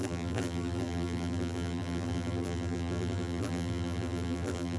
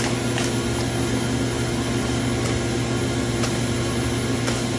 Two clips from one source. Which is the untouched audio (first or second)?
second